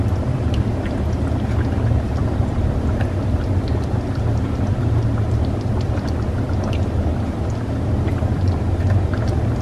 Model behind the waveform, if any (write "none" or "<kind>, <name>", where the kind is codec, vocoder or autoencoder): vocoder, BigVGAN v2